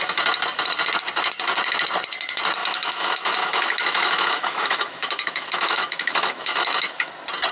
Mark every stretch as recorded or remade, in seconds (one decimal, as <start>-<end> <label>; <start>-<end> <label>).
0.0-2.6 recorded; 2.6-7.1 remade; 7.1-7.5 recorded